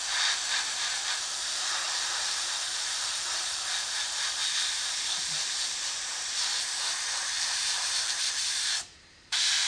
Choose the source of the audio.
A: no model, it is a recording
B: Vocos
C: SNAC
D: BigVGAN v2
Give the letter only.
D